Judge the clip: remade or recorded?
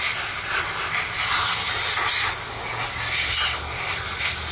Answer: recorded